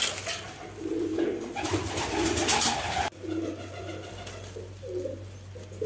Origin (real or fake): real